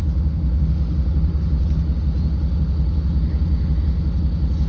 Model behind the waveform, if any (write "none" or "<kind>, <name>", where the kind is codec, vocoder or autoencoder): none